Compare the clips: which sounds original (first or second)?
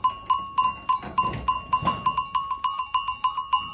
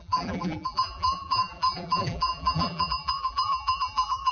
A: first